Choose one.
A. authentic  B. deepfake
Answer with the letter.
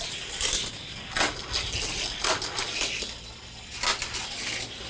A